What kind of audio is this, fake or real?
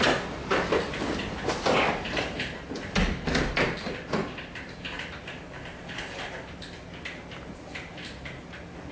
real